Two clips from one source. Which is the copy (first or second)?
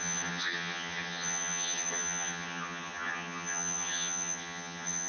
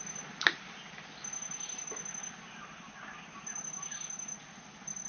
first